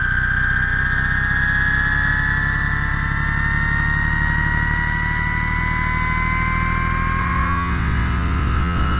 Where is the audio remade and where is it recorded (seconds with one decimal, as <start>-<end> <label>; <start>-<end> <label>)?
0.0-7.2 recorded; 7.2-9.0 remade